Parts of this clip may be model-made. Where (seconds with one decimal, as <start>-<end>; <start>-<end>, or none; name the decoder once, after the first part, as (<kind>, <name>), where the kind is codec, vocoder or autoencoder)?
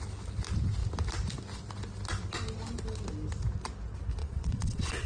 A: 4.2-5.1 (vocoder, WaveNeXt)